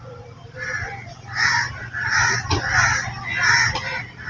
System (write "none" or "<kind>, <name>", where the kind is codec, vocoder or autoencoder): none